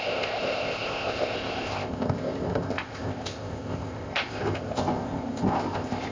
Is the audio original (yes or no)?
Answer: no